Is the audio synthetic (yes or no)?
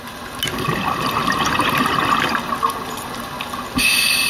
no